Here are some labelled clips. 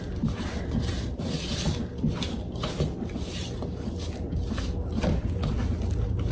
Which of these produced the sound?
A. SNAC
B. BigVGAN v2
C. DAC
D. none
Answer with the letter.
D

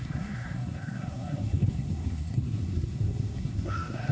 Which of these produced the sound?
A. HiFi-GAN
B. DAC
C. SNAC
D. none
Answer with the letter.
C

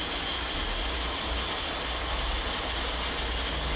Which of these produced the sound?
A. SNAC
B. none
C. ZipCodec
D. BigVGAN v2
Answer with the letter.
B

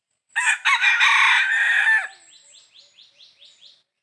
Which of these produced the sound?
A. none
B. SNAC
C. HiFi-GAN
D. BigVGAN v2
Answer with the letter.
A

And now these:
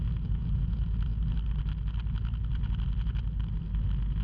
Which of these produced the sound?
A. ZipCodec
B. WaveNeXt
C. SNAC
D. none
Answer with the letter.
D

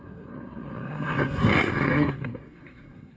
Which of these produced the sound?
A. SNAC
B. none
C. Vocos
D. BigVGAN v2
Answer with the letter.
A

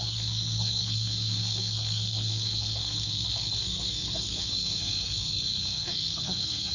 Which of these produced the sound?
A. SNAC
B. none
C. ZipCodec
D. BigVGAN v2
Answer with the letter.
A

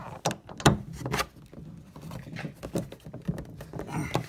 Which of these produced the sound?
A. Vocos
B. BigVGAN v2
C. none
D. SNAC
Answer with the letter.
C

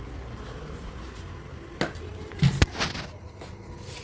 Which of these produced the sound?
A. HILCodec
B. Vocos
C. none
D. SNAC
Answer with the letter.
C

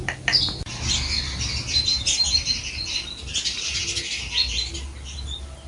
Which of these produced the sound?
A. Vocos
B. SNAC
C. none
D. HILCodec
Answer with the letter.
C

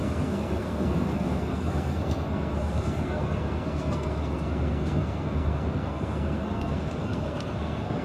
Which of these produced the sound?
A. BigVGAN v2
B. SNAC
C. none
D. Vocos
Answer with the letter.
B